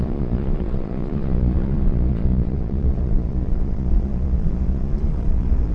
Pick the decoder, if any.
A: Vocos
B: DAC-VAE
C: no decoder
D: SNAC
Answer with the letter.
A